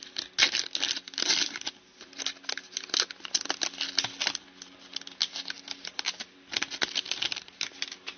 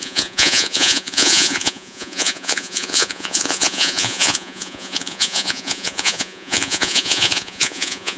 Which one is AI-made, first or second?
second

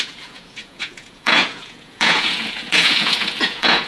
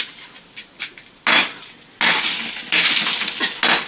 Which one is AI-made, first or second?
first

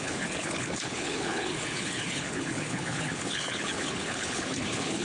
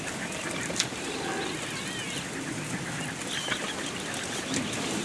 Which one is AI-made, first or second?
first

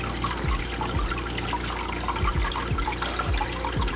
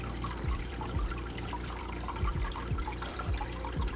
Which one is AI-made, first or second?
second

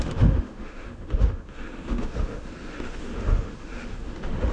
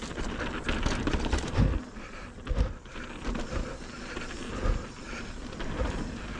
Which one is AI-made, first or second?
first